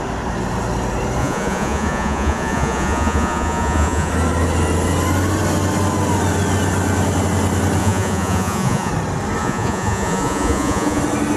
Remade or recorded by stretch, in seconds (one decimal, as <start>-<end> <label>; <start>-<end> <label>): 0.0-1.2 recorded; 1.2-4.1 remade; 4.1-7.8 recorded; 7.8-8.9 remade; 8.9-9.4 recorded; 9.4-11.0 remade; 11.0-11.4 recorded

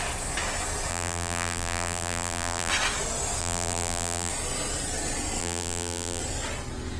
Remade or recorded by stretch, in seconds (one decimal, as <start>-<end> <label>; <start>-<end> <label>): 0.0-0.9 recorded; 0.9-2.7 remade; 2.7-3.4 recorded; 3.4-4.3 remade; 4.3-5.4 recorded; 5.4-6.2 remade; 6.2-7.0 recorded

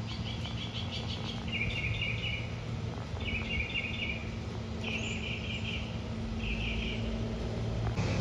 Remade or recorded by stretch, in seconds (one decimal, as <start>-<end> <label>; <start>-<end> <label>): 0.0-8.2 recorded

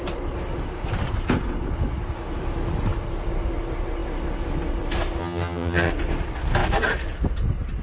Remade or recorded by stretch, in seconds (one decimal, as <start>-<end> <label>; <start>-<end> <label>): 0.0-5.2 recorded; 5.2-5.9 remade; 5.9-7.8 recorded

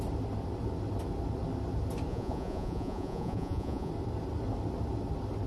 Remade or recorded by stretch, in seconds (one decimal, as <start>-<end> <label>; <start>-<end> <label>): 0.0-2.1 recorded; 2.1-3.9 remade; 3.9-5.5 recorded

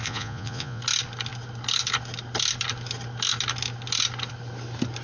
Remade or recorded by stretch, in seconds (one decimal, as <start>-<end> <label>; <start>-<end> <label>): 0.0-0.8 remade; 0.8-5.0 recorded

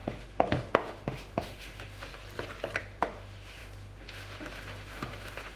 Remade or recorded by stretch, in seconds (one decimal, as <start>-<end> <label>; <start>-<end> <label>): 0.0-2.1 remade; 2.1-2.8 recorded; 2.8-5.6 remade

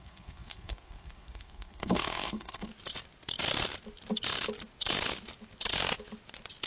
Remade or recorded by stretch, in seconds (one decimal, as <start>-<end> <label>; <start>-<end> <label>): 0.0-2.7 remade; 2.7-6.7 recorded